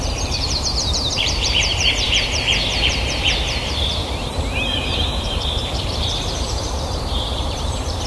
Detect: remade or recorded remade